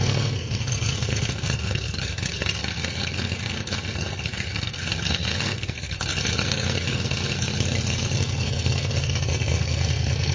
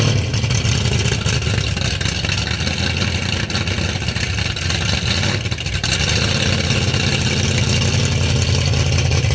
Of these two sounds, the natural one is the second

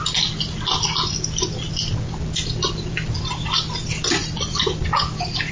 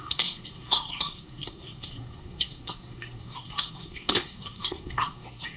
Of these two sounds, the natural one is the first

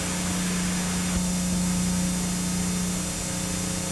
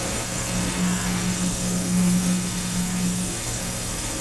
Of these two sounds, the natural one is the first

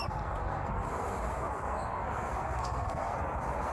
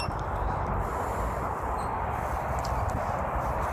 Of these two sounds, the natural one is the second